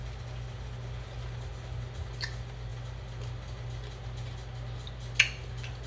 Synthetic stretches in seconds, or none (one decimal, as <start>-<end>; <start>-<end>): none

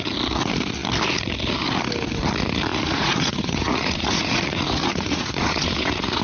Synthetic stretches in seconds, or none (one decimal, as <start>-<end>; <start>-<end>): 2.7-6.2

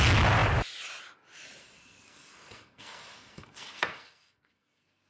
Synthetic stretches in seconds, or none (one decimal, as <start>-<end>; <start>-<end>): 1.6-5.1

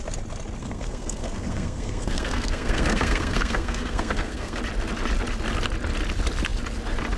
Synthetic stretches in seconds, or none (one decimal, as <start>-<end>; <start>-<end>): 0.6-4.6

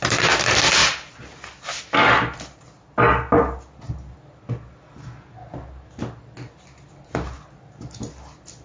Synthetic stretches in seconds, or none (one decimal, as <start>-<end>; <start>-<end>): none

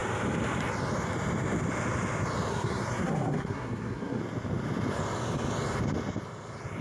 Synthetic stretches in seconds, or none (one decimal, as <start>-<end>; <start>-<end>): 2.5-4.2

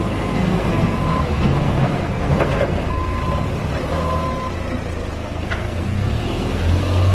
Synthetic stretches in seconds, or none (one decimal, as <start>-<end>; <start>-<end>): 0.0-3.2; 5.1-7.1

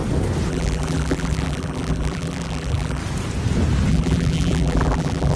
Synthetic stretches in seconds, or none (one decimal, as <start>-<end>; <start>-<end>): 0.5-3.0; 3.9-5.4